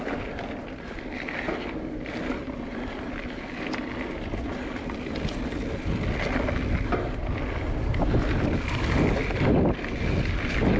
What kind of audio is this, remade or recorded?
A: recorded